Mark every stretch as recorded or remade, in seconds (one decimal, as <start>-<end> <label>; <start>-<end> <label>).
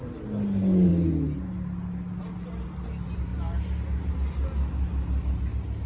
0.0-5.9 recorded